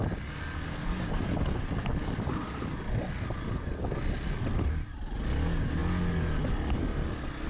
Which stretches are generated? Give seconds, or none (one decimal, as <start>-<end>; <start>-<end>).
none